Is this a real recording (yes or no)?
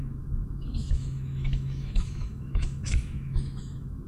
no